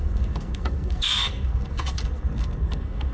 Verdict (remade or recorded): remade